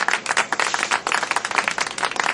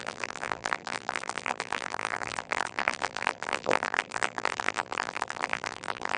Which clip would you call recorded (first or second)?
first